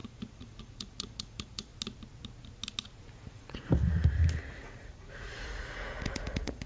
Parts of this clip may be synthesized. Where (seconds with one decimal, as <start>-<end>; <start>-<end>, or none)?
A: 0.0-1.7; 3.3-3.7; 4.5-6.7

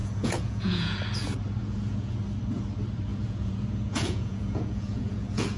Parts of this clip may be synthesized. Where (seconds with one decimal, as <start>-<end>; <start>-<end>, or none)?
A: 0.0-1.0; 1.6-2.2; 3.1-5.6

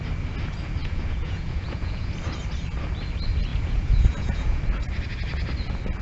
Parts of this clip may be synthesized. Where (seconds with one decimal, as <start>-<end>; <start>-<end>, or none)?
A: 0.8-2.1; 3.5-4.6